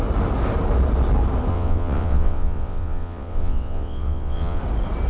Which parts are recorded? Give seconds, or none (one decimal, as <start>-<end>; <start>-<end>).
0.0-1.5; 4.6-5.1

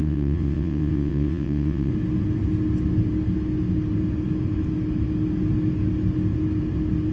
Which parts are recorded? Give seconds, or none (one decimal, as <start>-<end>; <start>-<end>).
1.9-7.1

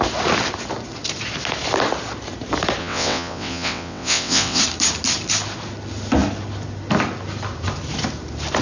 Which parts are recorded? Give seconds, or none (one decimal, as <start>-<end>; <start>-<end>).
0.0-2.8; 4.6-8.6

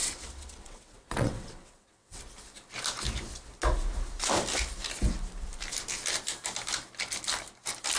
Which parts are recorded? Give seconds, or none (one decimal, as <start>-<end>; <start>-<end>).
2.2-8.0

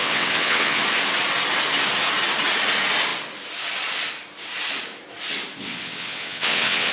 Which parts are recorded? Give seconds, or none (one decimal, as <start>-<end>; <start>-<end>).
0.8-5.7

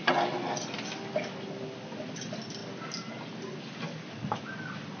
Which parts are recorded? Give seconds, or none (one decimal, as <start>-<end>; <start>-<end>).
0.0-5.0